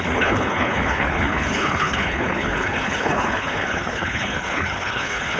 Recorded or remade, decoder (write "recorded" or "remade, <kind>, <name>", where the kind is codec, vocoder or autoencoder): remade, codec, HILCodec